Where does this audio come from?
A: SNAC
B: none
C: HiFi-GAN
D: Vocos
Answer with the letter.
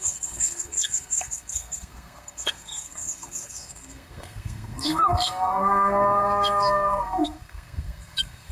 A